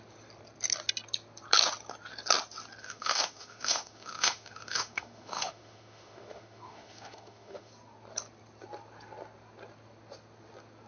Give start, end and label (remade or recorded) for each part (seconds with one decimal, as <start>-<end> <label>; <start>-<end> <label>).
0.0-2.8 recorded; 2.8-7.7 remade; 7.7-10.9 recorded